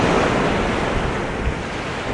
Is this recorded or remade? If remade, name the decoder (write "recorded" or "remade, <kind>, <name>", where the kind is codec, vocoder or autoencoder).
recorded